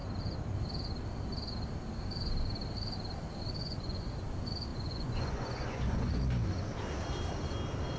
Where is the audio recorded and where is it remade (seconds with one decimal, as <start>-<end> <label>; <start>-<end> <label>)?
0.0-3.6 recorded; 3.6-4.1 remade; 4.1-4.7 recorded; 4.7-6.2 remade; 6.2-8.0 recorded